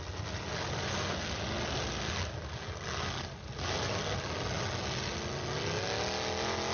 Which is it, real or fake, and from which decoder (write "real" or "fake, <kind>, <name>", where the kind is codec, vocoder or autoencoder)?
real